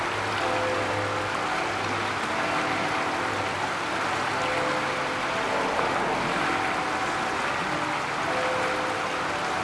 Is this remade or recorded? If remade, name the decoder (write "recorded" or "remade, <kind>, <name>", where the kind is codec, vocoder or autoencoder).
recorded